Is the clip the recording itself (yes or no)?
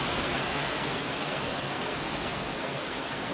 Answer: no